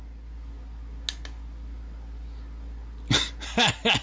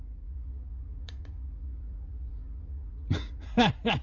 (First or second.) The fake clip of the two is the second